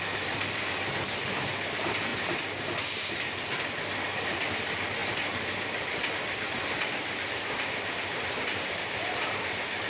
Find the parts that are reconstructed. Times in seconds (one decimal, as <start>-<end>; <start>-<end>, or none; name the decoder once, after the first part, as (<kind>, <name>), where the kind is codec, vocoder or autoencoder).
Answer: 0.0-2.1 (vocoder, BigVGAN v2); 4.2-5.0; 6.5-9.9